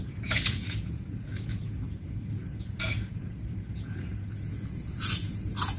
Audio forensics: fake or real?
fake